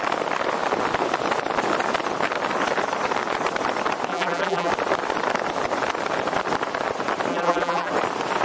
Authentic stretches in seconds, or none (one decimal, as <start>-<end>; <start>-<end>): 0.0-4.1; 4.7-7.3; 7.9-8.4